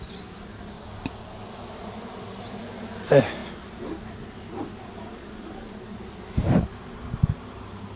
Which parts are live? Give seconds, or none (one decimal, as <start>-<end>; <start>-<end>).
0.0-8.0